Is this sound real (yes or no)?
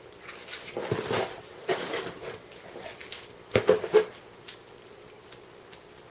yes